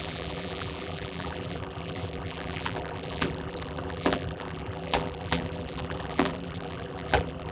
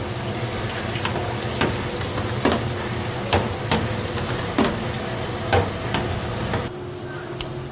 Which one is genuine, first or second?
second